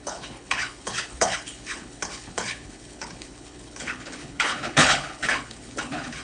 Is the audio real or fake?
fake